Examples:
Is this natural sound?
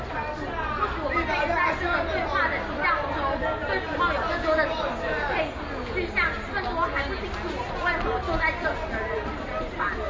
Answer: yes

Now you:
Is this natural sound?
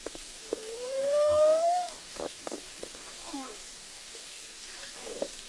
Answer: no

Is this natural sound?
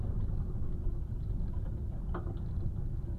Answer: yes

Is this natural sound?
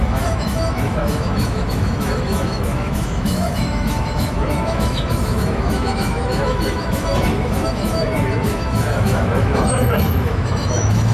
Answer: no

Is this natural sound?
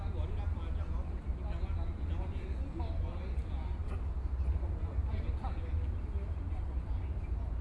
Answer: yes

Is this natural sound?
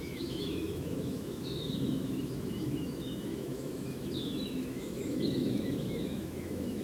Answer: no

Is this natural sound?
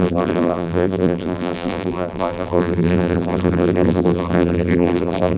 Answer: no